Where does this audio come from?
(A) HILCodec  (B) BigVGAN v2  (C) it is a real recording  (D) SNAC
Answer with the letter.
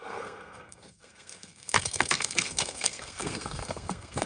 D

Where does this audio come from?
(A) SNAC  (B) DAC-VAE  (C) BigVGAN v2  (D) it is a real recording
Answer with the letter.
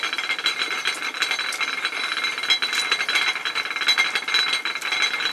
D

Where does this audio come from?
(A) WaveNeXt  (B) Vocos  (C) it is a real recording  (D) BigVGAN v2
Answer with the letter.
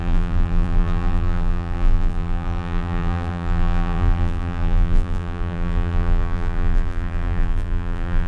D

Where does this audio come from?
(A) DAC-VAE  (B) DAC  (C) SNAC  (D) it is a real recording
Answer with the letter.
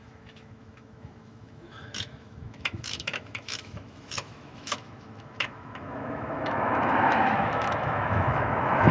A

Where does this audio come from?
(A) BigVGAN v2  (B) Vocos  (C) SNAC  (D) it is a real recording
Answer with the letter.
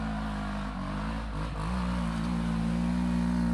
D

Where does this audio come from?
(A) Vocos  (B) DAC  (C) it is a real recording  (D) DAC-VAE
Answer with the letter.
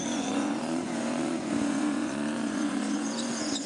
A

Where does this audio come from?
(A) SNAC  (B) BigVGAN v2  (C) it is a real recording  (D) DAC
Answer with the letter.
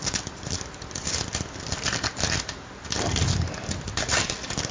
C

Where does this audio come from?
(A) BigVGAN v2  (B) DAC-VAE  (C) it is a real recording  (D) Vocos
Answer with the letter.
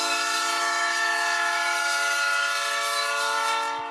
B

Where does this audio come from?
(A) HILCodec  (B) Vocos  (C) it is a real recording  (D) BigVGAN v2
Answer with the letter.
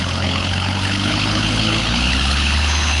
A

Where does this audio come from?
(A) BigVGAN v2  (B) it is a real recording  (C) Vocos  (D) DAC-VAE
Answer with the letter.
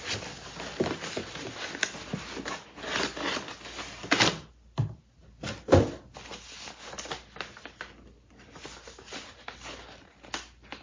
B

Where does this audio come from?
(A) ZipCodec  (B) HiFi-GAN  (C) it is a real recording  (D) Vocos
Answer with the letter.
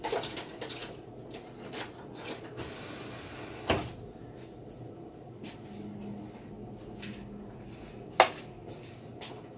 C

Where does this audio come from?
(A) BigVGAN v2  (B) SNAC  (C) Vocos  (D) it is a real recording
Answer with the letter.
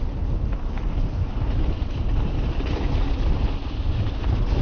D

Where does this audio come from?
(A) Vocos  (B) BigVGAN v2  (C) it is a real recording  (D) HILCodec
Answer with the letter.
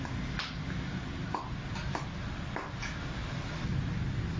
C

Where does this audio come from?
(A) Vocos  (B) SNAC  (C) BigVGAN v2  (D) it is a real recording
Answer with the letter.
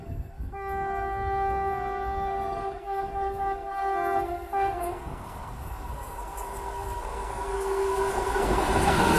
B